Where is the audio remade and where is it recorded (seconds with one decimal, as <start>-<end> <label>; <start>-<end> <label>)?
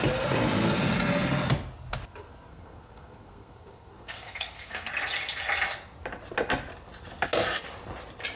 0.0-2.5 recorded; 2.5-4.9 remade; 4.9-8.4 recorded